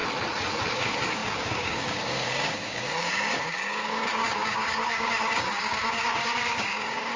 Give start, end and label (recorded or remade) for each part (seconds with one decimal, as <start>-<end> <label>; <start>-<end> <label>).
0.0-0.7 recorded; 0.7-7.2 remade